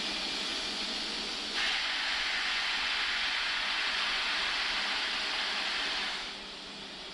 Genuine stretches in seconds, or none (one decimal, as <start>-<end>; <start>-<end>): 0.0-0.5; 4.3-7.1